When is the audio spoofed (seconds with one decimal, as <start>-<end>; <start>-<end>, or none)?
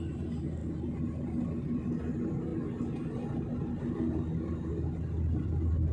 none